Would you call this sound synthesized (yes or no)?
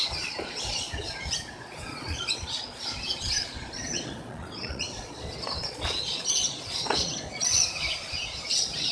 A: yes